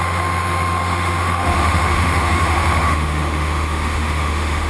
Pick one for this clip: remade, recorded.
remade